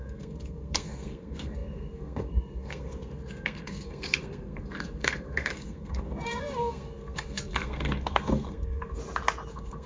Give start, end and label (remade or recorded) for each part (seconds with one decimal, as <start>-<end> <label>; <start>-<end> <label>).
0.0-9.0 remade; 9.0-9.5 recorded; 9.5-9.9 remade